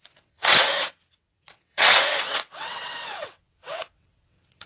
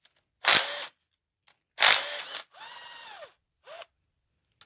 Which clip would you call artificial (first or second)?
first